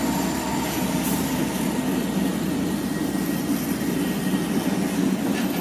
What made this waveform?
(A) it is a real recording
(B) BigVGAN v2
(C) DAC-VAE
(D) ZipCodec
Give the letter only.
A